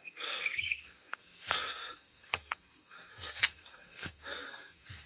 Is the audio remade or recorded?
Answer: remade